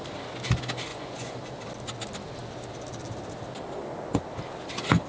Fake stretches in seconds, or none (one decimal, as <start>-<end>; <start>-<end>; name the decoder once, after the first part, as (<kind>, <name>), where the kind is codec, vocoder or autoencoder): 0.9-1.4 (vocoder, Vocos)